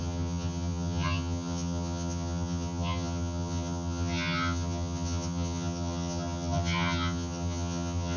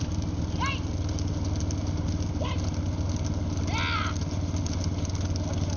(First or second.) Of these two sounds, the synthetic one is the first